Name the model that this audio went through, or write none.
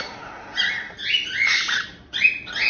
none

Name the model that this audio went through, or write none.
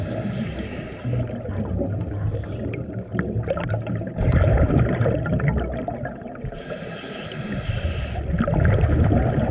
none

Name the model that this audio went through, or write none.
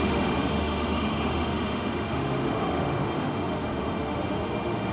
autoencoder, DAC-VAE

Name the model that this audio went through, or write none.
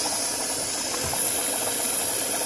none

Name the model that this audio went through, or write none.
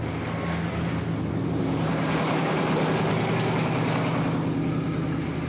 none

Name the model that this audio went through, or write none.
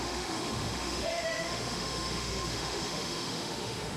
autoencoder, DAC-VAE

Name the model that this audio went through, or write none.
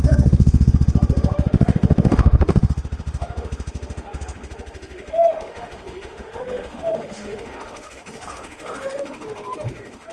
autoencoder, DAC-VAE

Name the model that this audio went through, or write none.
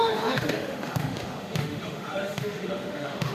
autoencoder, DAC-VAE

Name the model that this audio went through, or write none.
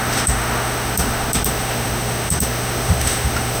autoencoder, DAC-VAE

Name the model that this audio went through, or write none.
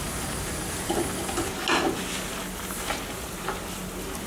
none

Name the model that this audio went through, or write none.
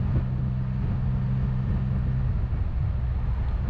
none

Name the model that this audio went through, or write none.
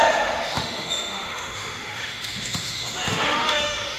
autoencoder, DAC-VAE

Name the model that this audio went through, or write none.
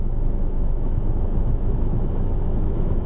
autoencoder, DAC-VAE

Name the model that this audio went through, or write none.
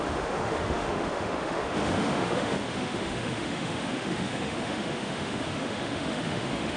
autoencoder, DAC-VAE